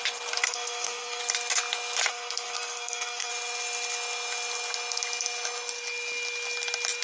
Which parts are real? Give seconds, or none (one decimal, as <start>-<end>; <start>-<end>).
0.0-0.4; 1.2-2.1; 3.3-7.0